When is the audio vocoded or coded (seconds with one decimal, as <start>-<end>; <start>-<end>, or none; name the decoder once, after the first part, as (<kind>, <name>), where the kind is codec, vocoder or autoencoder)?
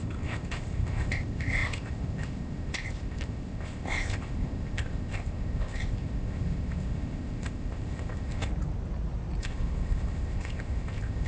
0.0-8.5 (codec, ZipCodec); 9.4-11.3